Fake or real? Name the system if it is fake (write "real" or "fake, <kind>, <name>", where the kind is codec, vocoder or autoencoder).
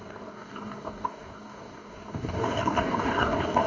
fake, codec, DAC